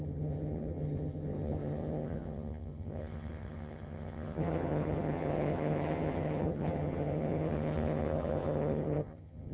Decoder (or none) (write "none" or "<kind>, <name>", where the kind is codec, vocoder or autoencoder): vocoder, HiFi-GAN